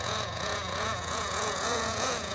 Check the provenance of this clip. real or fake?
fake